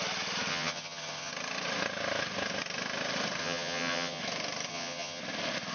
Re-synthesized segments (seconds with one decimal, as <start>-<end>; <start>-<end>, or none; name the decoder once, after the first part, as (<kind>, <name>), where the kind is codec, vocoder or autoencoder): 0.5-1.3 (vocoder, HiFi-GAN); 3.4-4.2; 4.7-5.2